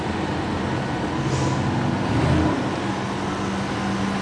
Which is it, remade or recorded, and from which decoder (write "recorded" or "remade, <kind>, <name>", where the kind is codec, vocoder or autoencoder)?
recorded